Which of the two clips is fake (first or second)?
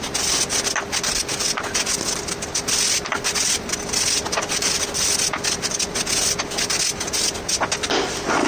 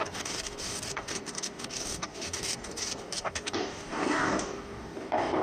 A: second